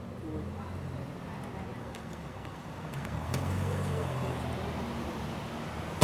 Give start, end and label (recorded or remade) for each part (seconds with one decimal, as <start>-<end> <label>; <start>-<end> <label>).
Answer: 0.0-1.8 recorded; 1.8-4.4 remade; 4.4-6.0 recorded